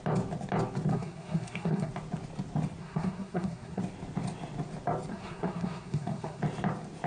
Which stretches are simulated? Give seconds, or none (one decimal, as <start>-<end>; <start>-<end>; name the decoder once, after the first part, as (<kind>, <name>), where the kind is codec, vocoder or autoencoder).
0.9-1.9 (codec, SNAC); 2.8-3.8; 5.1-6.4